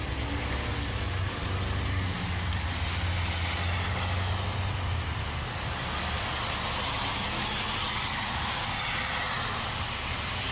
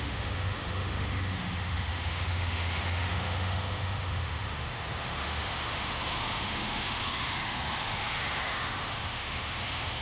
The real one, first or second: first